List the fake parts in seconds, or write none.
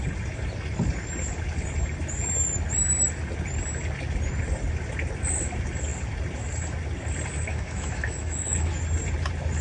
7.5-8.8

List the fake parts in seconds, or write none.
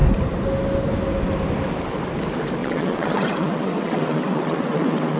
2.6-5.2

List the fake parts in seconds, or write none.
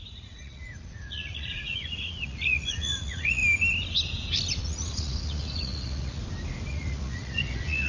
0.0-3.4; 4.6-6.2; 6.7-7.9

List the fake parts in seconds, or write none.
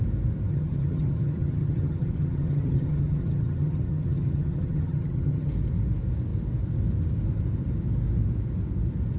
0.5-5.5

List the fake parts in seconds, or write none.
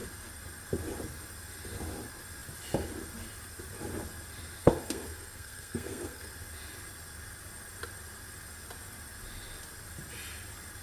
4.6-6.3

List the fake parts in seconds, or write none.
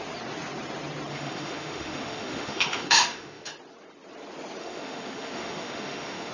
1.1-3.5; 4.6-6.3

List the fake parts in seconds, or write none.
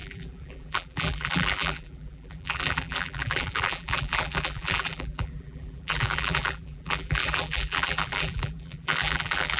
0.0-9.6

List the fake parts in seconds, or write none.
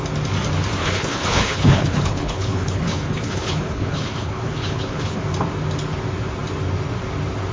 0.8-5.2